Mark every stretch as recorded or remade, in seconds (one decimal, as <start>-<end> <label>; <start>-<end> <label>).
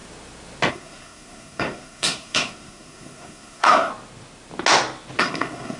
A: 0.0-0.7 recorded; 0.7-3.9 remade; 3.9-5.2 recorded; 5.2-5.8 remade